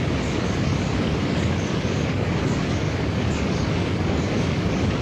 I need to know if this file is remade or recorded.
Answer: remade